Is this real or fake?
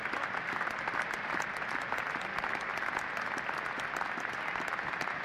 real